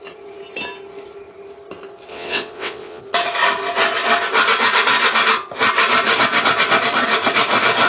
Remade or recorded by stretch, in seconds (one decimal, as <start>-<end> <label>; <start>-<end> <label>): 0.0-2.1 recorded; 2.1-3.0 remade; 3.0-7.9 recorded